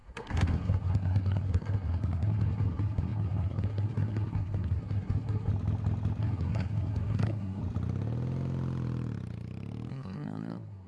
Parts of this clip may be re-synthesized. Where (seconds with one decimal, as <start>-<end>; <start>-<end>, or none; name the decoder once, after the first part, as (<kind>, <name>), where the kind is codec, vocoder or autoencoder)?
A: 0.0-5.5 (codec, SNAC); 6.2-7.6; 9.9-10.9